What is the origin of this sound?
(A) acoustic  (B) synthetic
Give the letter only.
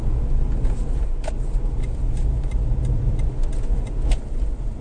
A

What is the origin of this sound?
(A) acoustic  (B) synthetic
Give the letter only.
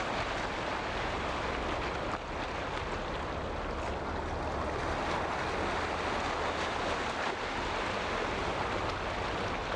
A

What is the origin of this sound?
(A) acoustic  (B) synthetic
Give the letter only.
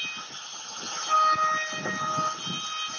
A